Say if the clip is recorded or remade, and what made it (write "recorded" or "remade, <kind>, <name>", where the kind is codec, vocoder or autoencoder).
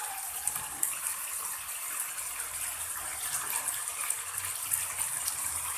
recorded